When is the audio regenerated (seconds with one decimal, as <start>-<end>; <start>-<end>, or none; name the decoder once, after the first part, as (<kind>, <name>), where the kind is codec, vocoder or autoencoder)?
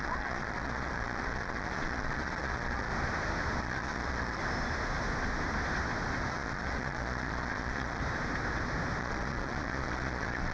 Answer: 0.0-2.9 (vocoder, Vocos); 3.6-4.4; 6.3-8.0; 9.0-10.5